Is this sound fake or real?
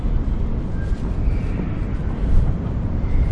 real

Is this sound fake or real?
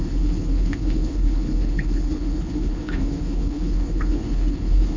fake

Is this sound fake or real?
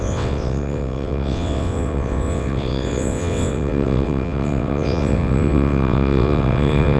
fake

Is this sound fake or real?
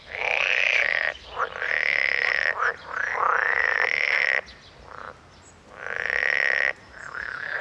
fake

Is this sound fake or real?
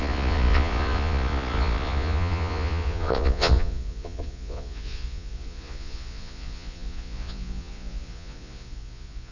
fake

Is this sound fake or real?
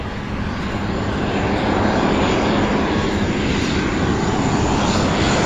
real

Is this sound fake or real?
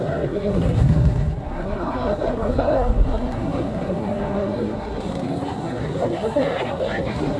fake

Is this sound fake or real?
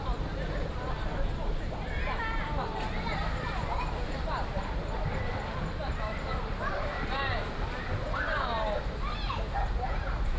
real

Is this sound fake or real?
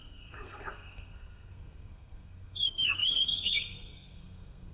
fake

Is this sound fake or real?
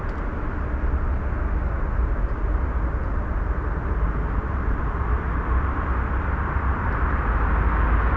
real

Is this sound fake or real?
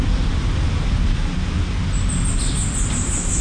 real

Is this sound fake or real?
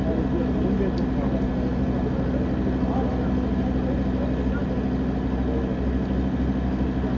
real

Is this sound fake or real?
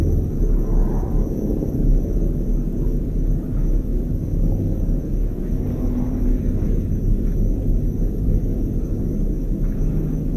fake